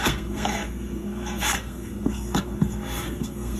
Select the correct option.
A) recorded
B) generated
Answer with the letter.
B